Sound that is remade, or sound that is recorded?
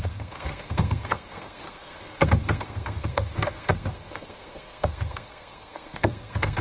remade